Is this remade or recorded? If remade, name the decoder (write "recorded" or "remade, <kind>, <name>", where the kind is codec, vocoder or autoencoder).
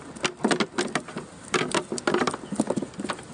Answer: recorded